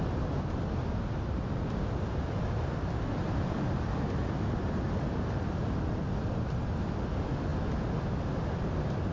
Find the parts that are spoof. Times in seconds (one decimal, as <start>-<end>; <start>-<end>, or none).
0.0-0.8; 1.4-7.5; 8.7-9.1